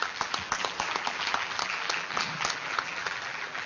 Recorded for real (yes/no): no